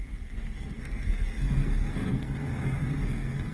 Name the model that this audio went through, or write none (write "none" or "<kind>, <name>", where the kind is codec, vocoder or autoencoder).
codec, SNAC